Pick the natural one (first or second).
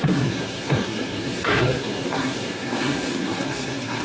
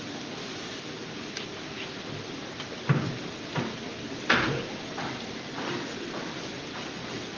second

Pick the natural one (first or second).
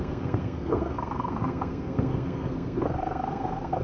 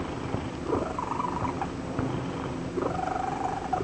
second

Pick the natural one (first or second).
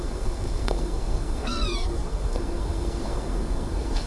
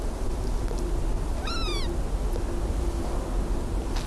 second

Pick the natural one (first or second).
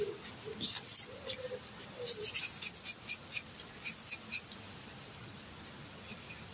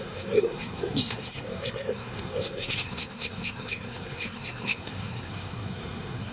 first